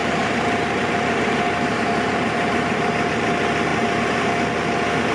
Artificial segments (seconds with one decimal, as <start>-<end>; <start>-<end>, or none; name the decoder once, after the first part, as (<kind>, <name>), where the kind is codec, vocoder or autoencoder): 0.0-3.1 (vocoder, BigVGAN v2); 3.7-4.3